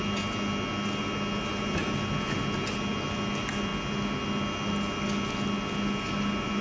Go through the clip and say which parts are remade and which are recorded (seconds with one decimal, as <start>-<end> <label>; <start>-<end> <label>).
0.0-6.6 recorded